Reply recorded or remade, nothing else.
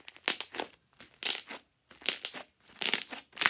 recorded